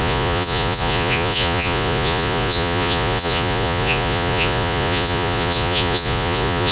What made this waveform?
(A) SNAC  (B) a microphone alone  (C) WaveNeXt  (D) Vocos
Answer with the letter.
D